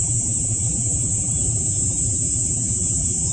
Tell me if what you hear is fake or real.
fake